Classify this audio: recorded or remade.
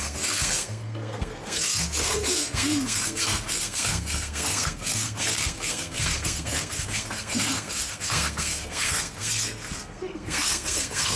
remade